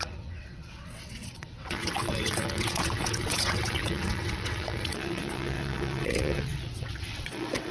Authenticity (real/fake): fake